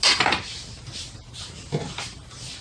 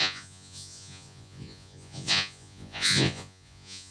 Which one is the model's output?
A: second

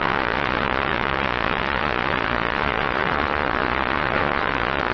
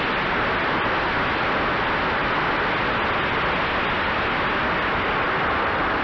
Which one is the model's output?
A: first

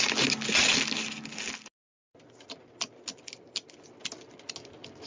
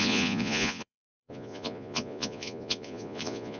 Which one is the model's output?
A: second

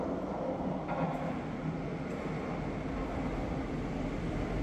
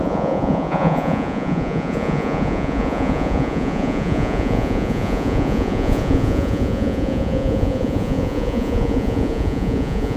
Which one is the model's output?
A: second